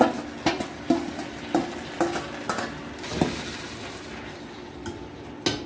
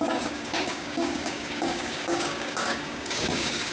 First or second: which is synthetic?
second